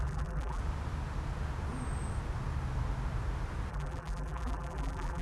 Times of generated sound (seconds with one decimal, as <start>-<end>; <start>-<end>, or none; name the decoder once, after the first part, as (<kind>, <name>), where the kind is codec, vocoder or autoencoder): 0.0-0.6 (vocoder, BigVGAN v2); 3.7-5.2